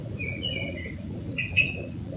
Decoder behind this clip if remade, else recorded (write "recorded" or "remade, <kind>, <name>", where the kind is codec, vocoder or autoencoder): remade, vocoder, Vocos